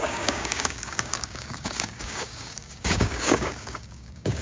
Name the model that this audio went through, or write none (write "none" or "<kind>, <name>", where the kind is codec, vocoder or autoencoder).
codec, DAC